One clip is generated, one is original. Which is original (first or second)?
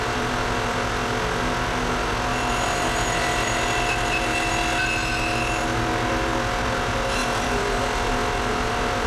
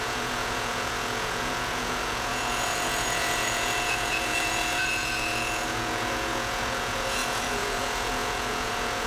first